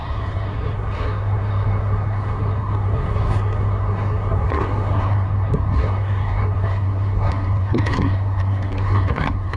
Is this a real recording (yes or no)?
no